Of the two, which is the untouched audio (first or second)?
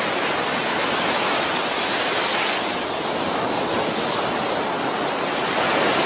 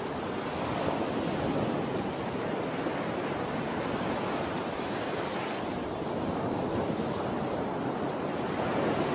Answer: first